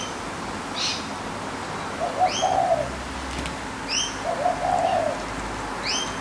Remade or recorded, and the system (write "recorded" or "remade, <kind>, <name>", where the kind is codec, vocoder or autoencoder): recorded